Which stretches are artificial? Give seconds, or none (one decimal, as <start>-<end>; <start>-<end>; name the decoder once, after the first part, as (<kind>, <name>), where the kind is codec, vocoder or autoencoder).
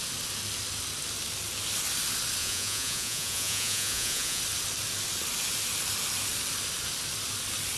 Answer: 2.4-4.4 (vocoder, Vocos)